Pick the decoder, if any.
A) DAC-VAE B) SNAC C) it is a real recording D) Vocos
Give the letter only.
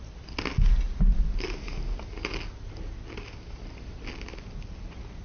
C